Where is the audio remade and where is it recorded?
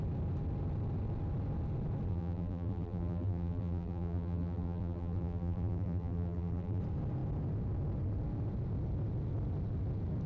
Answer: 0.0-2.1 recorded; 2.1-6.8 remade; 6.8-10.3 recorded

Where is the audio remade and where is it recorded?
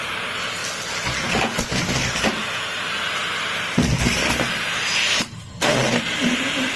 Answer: 0.0-0.6 remade; 0.6-4.7 recorded; 4.7-6.8 remade